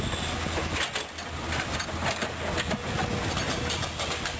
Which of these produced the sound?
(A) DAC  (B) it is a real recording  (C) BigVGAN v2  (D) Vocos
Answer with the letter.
B